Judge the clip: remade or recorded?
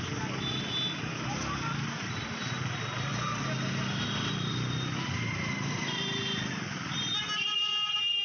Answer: recorded